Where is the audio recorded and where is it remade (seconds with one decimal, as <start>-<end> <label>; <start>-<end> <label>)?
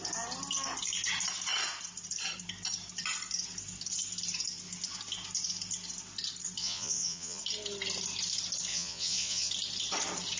0.0-6.6 recorded; 6.6-7.4 remade; 7.4-8.7 recorded; 8.7-9.5 remade; 9.5-10.4 recorded